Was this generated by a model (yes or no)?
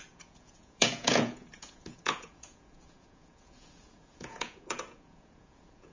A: yes